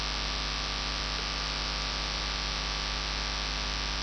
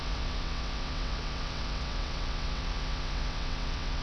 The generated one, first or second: second